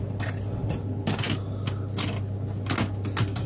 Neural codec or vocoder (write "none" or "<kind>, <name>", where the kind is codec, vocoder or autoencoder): none